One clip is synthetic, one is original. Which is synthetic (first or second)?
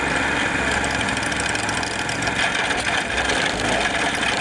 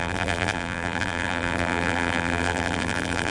second